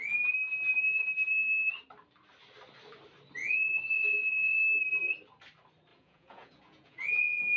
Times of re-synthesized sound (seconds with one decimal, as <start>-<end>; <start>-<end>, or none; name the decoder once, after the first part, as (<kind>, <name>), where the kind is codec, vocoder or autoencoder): 3.4-4.6 (vocoder, Vocos); 5.9-7.6